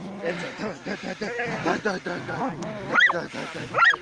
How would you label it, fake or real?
real